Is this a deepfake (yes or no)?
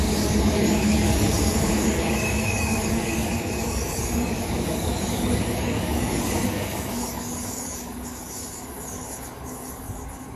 yes